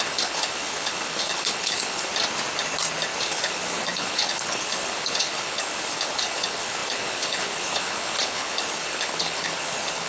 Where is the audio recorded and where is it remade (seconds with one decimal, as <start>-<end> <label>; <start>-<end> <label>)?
0.0-2.1 remade; 2.1-3.3 recorded; 3.3-10.1 remade